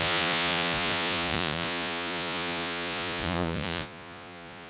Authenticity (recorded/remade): remade